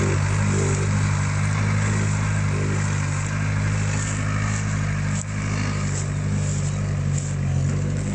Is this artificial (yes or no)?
no